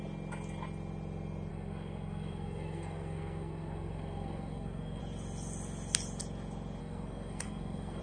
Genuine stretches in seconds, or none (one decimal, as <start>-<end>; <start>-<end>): 0.0-1.5; 5.0-6.8